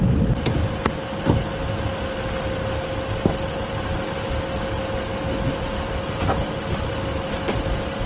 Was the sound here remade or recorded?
recorded